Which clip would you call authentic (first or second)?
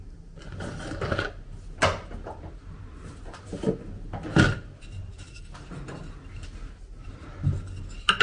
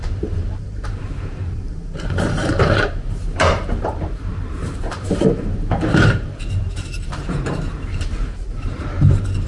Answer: first